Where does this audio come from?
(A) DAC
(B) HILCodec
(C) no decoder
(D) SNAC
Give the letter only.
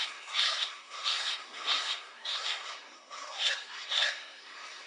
D